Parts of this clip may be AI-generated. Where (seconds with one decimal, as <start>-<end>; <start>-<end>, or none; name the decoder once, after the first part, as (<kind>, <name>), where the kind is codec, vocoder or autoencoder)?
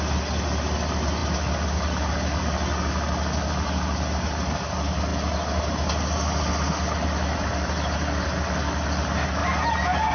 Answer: none